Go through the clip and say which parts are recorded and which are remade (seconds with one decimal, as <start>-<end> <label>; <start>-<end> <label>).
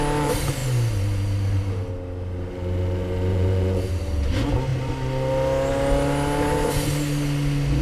0.0-3.3 recorded; 3.3-3.9 remade; 3.9-7.8 recorded